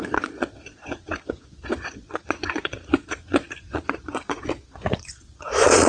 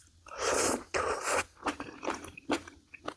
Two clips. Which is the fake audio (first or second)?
first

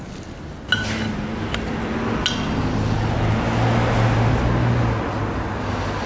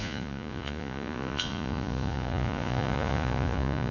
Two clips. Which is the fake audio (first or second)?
second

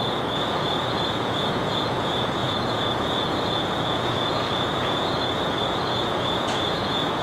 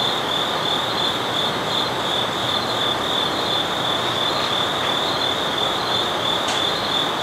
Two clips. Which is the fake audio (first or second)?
first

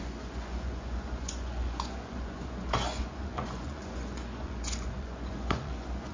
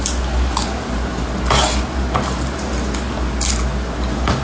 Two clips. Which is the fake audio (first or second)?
first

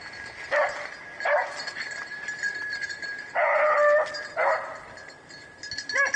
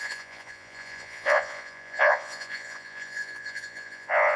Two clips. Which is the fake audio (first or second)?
second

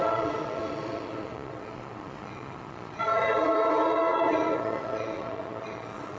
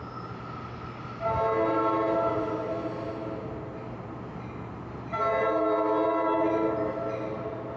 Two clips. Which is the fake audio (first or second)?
first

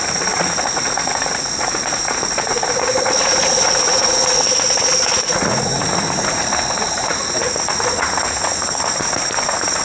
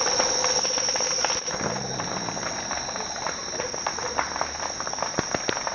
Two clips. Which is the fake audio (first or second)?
first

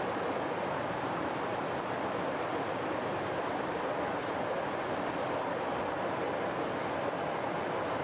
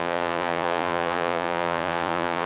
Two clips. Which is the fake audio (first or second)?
second